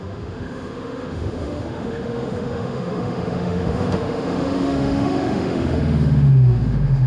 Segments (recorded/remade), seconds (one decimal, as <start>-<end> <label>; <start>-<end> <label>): 0.0-7.1 remade